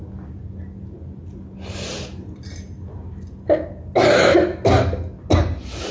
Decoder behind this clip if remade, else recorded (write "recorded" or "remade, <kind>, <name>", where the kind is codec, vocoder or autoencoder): recorded